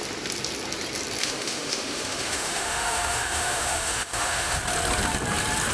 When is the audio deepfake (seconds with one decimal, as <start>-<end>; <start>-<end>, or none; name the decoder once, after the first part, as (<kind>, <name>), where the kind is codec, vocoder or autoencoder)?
1.2-4.6 (autoencoder, DAC-VAE)